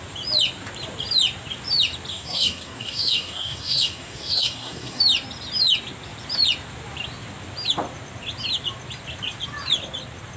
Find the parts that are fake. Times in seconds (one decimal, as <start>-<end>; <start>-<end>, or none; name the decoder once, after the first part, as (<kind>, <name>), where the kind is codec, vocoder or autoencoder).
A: 2.1-5.0 (codec, SNAC)